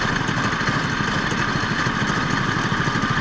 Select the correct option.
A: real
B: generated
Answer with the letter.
A